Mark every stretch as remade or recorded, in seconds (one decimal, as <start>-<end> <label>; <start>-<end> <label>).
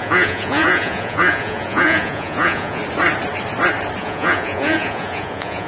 0.0-2.8 remade; 2.8-4.0 recorded; 4.0-5.7 remade